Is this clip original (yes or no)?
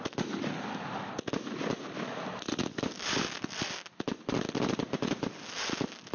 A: yes